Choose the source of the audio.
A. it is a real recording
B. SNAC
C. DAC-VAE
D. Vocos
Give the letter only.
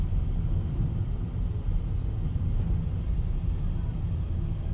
A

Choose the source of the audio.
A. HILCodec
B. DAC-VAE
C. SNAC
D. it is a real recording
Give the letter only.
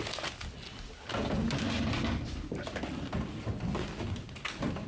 D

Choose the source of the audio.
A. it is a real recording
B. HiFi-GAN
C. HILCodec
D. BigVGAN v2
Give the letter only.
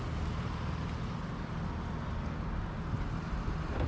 A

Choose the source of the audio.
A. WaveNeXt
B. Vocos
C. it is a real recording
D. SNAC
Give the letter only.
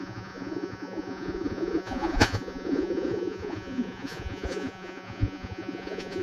B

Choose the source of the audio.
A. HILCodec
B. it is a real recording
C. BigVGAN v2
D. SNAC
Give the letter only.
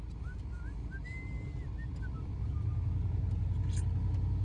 B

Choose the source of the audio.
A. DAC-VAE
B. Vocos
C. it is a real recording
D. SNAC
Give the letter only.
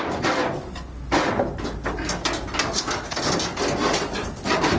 C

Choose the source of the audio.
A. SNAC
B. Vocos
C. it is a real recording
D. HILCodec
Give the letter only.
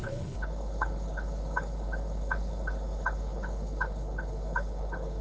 D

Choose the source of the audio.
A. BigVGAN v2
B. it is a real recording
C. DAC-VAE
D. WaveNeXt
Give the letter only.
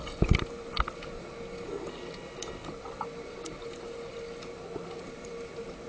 B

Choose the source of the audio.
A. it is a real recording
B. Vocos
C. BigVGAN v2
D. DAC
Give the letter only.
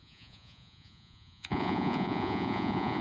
B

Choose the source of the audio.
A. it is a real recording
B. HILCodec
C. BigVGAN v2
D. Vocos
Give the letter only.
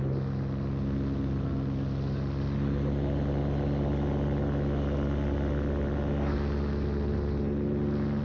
A